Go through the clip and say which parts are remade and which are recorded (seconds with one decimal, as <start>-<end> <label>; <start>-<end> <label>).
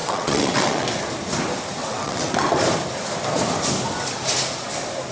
0.0-0.9 remade; 0.9-1.8 recorded; 1.8-2.3 remade; 2.3-5.1 recorded